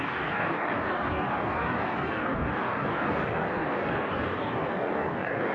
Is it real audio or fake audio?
fake